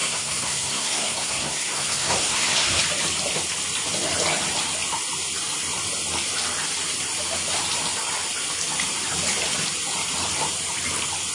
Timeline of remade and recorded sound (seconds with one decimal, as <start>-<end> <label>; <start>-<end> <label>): 0.0-2.8 remade; 2.8-11.3 recorded

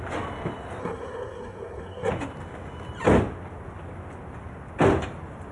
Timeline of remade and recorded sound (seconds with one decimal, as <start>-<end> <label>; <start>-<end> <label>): 0.0-0.8 recorded; 0.8-2.1 remade; 2.1-5.5 recorded

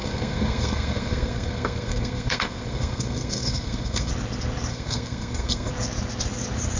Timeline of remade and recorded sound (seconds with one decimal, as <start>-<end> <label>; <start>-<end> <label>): 0.0-4.1 remade; 4.1-4.7 recorded; 4.7-5.7 remade; 5.7-6.8 recorded